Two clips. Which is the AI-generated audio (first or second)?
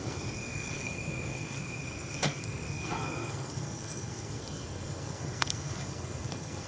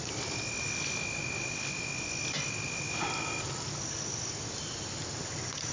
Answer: first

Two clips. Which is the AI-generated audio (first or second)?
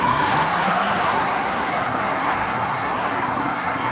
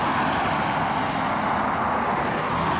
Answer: first